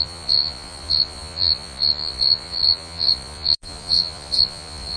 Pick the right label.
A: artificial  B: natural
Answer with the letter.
A